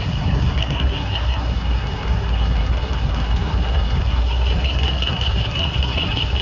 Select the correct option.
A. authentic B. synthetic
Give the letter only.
B